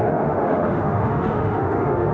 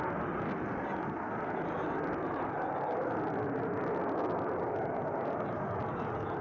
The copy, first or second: first